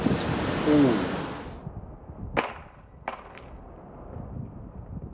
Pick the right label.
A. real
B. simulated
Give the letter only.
A